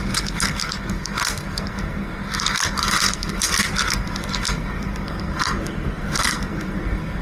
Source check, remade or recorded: remade